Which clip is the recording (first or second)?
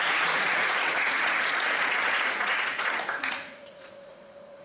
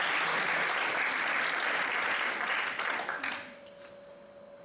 second